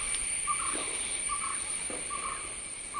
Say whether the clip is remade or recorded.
recorded